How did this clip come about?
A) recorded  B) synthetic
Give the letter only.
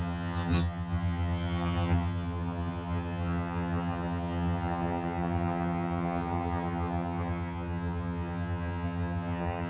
B